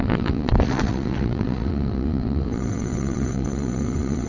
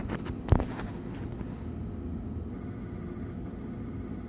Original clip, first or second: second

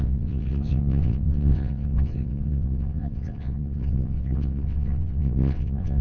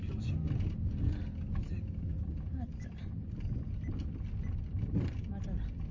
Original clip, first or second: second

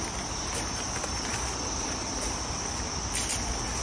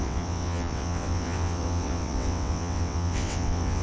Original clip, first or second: first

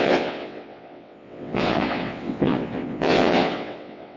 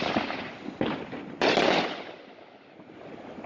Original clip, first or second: second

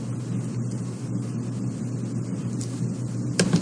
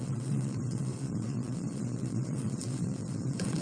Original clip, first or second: first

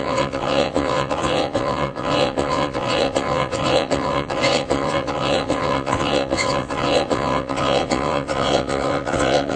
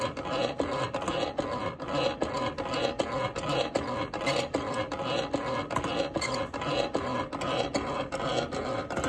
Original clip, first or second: second